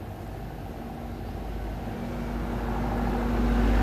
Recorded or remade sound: recorded